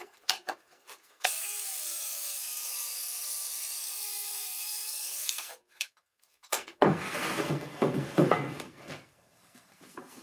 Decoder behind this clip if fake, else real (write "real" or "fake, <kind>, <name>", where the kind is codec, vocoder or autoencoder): fake, codec, SNAC